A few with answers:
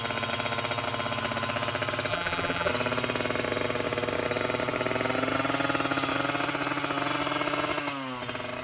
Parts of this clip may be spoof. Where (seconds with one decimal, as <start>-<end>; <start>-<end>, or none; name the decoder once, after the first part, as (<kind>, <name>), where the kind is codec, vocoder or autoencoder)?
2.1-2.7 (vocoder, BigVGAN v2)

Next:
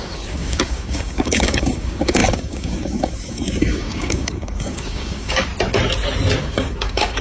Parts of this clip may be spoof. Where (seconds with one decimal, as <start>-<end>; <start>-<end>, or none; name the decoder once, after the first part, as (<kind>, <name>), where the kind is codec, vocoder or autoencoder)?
0.0-5.5 (codec, DAC); 6.4-7.2

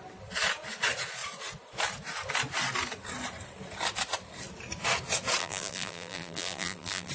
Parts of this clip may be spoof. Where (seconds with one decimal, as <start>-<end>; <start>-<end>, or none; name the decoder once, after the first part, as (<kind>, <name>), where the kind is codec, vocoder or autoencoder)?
5.4-7.1 (vocoder, BigVGAN v2)